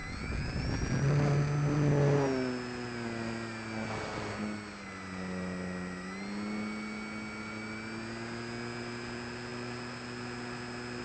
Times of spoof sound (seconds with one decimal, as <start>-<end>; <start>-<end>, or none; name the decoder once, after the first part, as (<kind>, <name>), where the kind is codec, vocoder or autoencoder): none